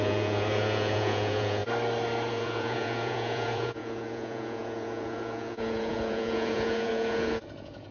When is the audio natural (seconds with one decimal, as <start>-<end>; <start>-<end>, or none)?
1.6-2.3